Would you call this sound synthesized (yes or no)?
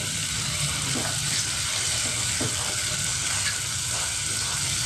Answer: no